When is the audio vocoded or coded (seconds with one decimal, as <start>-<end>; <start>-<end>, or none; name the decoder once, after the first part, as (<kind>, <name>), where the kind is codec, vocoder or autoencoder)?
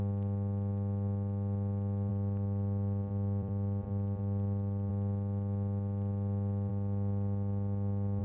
2.1-4.9 (vocoder, BigVGAN v2)